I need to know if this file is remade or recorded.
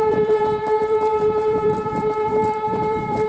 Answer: remade